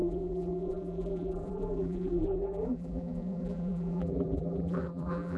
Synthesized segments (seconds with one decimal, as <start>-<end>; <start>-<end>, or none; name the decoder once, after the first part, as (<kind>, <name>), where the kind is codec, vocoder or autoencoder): 0.0-5.4 (vocoder, BigVGAN v2)